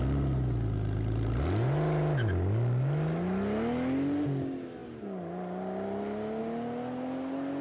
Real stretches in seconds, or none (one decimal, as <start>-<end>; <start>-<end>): 0.0-7.6